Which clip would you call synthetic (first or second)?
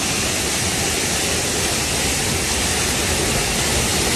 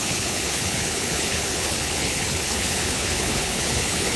second